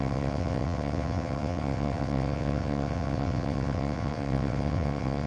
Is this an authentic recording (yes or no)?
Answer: no